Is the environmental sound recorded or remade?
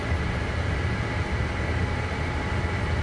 recorded